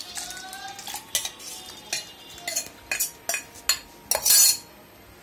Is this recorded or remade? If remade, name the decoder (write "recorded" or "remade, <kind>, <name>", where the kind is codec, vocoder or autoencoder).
recorded